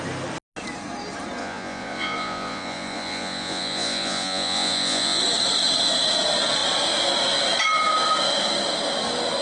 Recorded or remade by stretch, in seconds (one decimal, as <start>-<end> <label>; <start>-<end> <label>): 0.0-1.4 recorded; 1.4-5.2 remade; 5.2-9.4 recorded